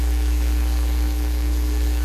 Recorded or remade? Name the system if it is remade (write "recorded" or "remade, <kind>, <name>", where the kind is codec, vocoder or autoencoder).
remade, codec, SNAC